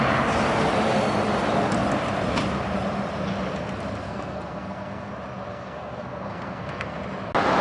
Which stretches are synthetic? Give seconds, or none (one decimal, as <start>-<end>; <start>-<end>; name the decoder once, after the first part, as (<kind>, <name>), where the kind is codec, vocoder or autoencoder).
4.0-5.1 (codec, SNAC); 5.5-7.0